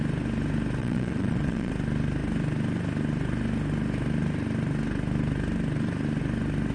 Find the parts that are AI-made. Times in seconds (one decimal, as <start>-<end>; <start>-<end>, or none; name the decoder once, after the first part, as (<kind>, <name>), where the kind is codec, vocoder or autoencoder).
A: 0.8-1.7 (vocoder, Vocos)